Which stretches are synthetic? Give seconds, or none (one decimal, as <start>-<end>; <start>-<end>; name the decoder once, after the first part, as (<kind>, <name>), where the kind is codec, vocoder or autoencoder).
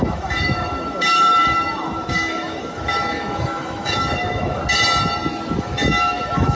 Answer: 0.0-4.6 (autoencoder, DAC-VAE); 5.6-6.5